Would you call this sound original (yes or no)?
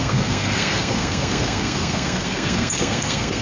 no